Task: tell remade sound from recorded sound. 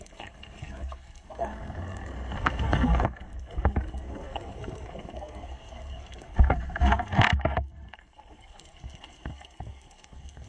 remade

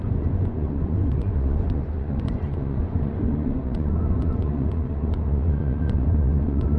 remade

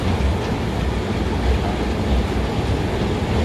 recorded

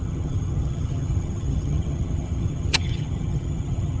remade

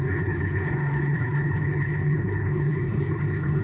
remade